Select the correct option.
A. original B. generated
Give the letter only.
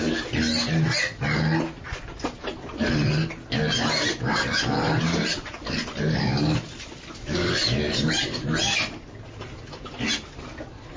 A